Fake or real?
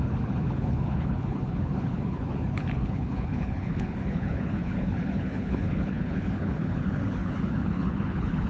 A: fake